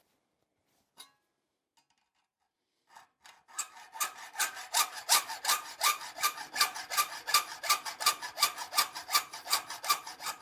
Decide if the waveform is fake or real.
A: real